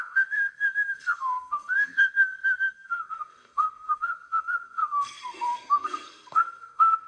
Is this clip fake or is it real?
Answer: fake